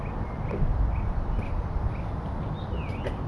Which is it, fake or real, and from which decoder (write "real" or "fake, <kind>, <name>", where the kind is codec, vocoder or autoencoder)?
real